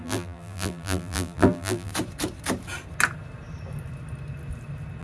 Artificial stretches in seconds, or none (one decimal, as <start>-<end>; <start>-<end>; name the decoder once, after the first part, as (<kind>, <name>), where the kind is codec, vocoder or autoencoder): 0.0-1.9 (vocoder, BigVGAN v2)